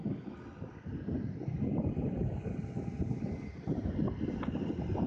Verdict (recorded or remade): recorded